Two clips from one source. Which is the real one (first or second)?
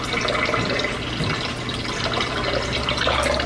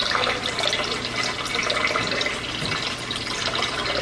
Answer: first